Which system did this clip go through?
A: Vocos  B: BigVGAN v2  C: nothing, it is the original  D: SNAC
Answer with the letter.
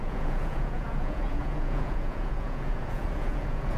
A